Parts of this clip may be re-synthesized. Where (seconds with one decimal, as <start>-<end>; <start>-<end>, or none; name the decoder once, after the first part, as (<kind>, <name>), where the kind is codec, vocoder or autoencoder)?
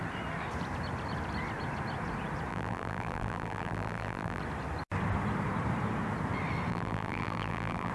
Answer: 2.5-4.4 (vocoder, BigVGAN v2); 6.7-7.9